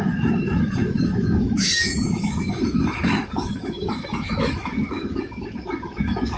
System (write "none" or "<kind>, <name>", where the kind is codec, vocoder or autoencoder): autoencoder, DAC-VAE